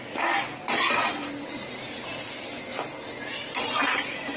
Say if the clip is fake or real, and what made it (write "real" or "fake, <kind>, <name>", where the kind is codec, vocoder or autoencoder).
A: real